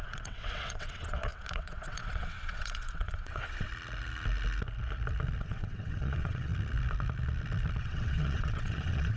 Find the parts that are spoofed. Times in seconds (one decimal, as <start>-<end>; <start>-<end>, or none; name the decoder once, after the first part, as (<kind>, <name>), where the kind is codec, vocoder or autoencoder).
0.0-3.7 (vocoder, WaveNeXt); 5.4-6.5; 7.8-9.2